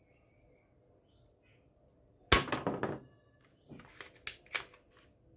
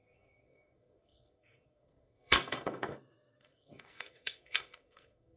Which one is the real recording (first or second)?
first